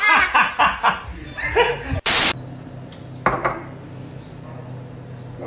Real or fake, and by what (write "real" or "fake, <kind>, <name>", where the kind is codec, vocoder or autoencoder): real